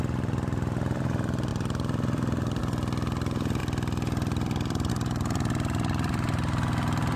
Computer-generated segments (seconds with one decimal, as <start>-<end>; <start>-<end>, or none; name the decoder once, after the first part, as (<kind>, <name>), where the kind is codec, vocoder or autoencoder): 0.0-7.2 (vocoder, BigVGAN v2)